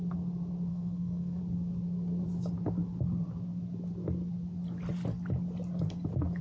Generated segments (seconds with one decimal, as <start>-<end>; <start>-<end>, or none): 0.7-1.4